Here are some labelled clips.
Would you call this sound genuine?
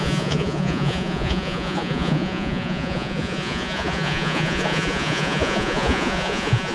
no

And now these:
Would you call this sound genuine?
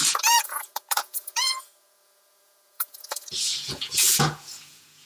no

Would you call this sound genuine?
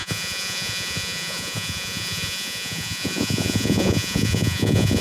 no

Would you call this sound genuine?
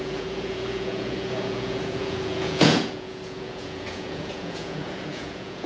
no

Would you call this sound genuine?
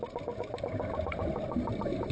yes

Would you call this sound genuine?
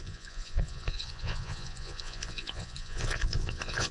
no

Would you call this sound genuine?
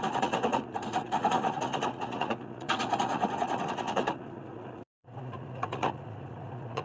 no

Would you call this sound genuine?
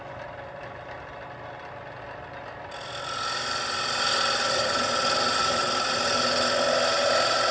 yes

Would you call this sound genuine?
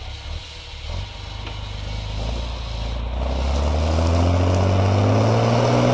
yes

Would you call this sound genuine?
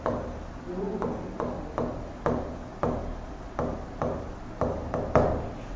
yes